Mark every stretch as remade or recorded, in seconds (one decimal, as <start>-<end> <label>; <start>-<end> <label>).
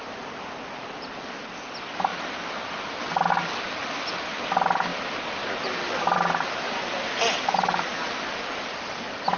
0.0-9.4 recorded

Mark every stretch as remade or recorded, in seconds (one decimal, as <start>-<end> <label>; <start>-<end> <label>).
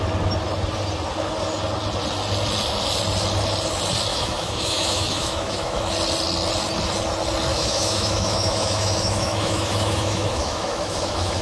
0.0-4.1 recorded; 4.1-5.8 remade; 5.8-7.5 recorded; 7.5-11.4 remade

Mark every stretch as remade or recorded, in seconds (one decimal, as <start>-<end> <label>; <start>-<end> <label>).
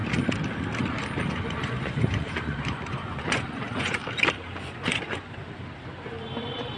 0.0-1.3 recorded; 1.3-4.0 remade; 4.0-4.7 recorded; 4.7-5.4 remade; 5.4-6.8 recorded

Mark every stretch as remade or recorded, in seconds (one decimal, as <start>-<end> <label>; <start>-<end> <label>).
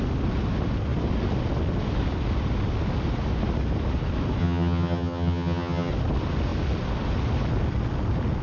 0.0-4.4 recorded; 4.4-5.9 remade; 5.9-8.4 recorded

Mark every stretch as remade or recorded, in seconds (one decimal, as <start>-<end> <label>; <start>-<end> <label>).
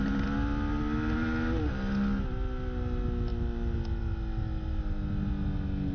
0.0-5.9 recorded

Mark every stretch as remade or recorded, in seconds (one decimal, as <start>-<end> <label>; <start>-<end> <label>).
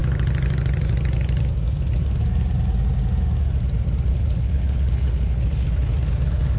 0.0-4.1 recorded; 4.1-5.7 remade; 5.7-6.6 recorded